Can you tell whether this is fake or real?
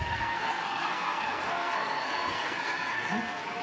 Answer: fake